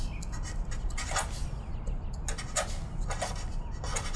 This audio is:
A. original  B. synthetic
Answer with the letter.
A